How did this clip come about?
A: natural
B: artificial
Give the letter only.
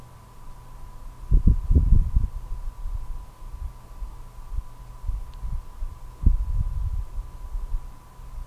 A